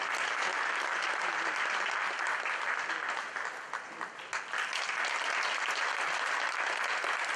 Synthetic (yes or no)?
no